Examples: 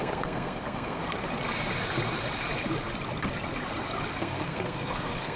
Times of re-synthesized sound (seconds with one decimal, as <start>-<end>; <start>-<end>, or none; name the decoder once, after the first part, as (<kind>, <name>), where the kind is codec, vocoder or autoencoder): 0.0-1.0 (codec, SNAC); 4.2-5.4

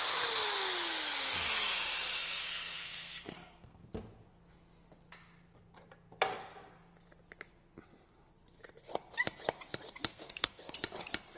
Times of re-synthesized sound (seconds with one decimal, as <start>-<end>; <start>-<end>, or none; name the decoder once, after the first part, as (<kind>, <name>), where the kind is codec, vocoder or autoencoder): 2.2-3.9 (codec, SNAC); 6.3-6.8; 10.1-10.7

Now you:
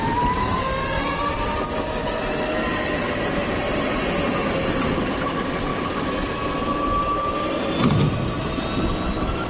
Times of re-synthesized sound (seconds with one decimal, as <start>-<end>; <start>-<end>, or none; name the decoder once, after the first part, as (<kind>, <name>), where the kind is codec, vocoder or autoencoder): 0.4-1.3 (codec, SNAC)

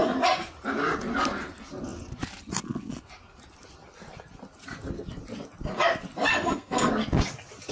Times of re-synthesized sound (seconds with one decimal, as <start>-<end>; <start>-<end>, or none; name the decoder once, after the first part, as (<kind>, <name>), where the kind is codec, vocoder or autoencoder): 6.3-6.9 (codec, SNAC)

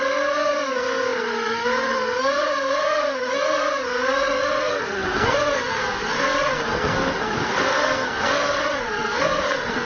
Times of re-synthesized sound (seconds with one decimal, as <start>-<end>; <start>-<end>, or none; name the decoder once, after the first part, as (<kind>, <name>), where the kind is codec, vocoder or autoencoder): 0.0-9.8 (codec, SNAC)